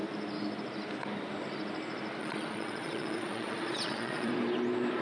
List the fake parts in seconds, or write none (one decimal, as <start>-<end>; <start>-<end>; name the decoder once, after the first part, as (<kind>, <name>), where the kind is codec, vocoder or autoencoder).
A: 2.2-4.3 (vocoder, Vocos)